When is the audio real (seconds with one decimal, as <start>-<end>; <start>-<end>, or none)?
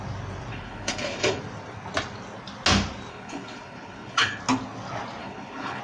0.0-0.5; 1.4-3.1; 4.4-5.2